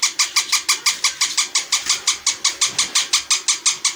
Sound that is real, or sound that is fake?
real